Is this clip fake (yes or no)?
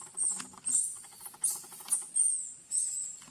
no